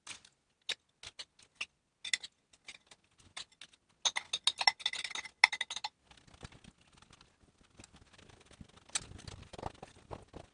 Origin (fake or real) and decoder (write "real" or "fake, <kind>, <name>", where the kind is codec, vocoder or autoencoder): real